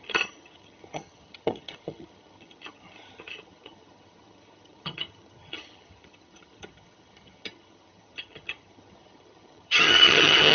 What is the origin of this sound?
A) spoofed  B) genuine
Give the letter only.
A